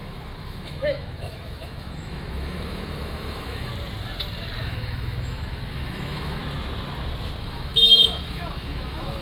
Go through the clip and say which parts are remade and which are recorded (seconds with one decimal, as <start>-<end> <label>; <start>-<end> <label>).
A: 0.0-3.7 remade; 3.7-4.6 recorded; 4.6-6.4 remade; 6.4-7.4 recorded; 7.4-9.2 remade